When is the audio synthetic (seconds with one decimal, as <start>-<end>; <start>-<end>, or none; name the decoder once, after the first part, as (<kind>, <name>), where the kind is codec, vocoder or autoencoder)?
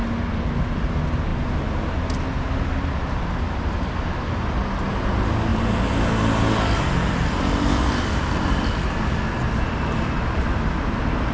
none